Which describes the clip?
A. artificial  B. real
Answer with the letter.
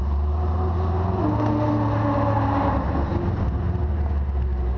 B